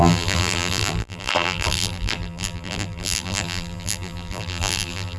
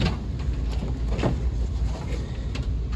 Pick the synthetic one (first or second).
first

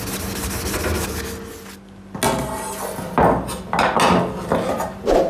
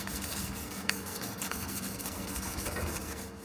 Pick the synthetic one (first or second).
second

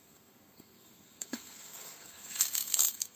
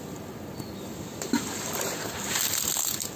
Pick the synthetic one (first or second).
first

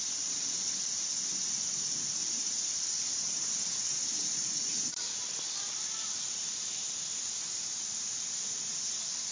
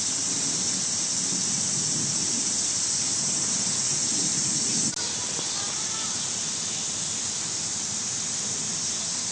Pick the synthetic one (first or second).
first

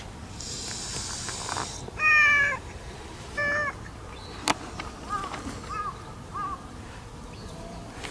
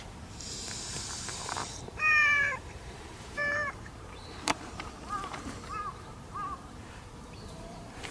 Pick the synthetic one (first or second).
second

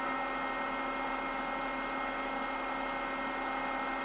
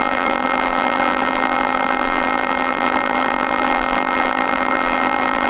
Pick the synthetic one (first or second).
second